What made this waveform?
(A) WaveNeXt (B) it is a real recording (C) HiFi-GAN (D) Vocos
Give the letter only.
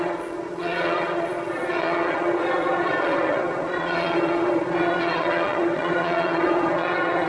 D